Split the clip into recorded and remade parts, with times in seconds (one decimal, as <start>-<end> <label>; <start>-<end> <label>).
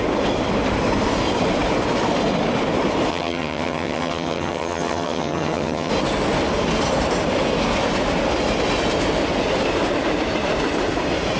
0.0-3.1 recorded; 3.1-5.9 remade; 5.9-11.4 recorded